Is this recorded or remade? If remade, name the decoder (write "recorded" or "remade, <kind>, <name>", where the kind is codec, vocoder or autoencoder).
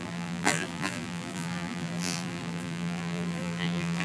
remade, vocoder, BigVGAN v2